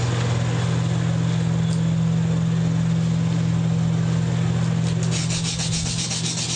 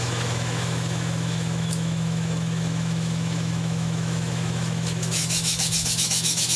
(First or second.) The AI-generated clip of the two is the second